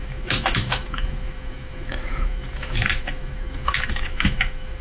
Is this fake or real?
fake